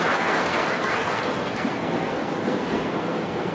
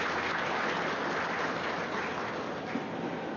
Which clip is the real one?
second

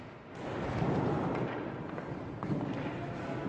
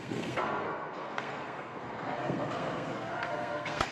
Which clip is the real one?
first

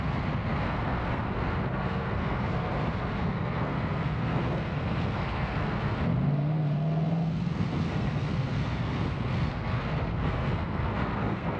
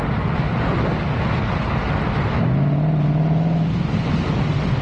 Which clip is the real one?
second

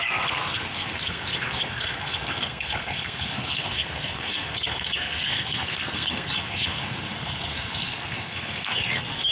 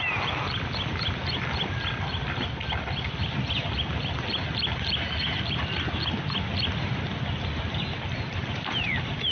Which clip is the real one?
second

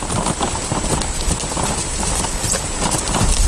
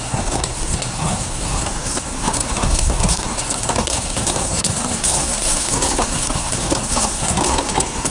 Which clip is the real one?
first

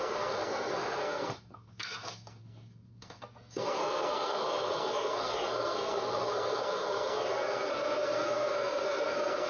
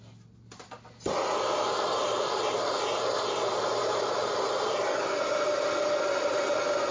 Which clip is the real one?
second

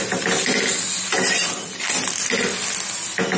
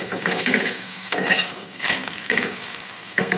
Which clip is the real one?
first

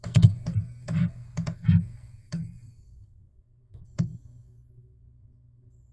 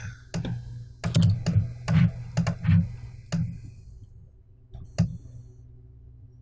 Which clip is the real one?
second